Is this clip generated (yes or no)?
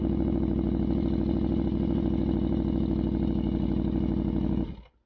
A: no